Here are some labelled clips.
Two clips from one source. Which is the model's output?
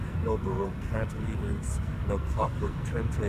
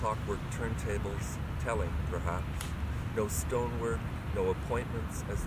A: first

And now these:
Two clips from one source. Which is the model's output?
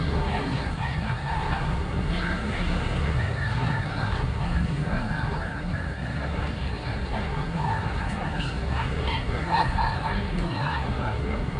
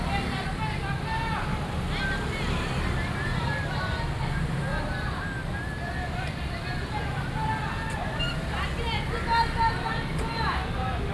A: first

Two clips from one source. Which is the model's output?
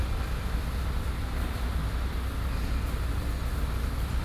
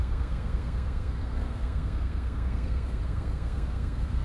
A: second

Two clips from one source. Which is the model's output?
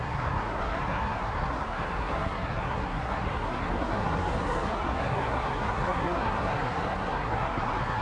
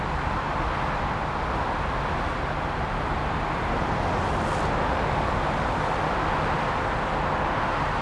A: first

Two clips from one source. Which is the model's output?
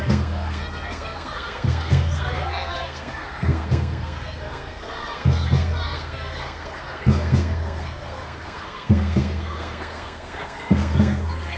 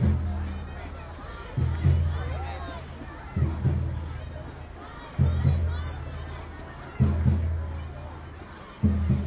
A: first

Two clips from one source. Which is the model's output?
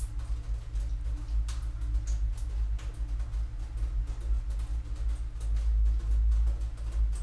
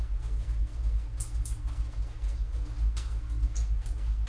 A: second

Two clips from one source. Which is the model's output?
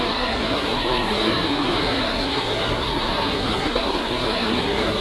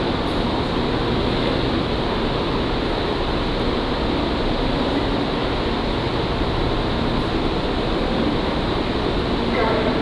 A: first